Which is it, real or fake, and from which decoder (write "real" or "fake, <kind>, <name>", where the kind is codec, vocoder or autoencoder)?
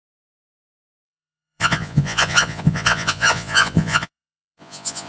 fake, vocoder, Vocos